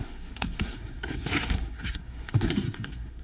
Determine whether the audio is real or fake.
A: fake